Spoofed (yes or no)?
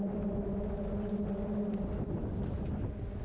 no